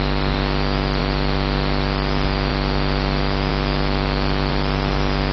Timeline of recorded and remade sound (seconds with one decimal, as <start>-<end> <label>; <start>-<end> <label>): 0.0-3.5 recorded; 3.5-4.5 remade; 4.5-5.3 recorded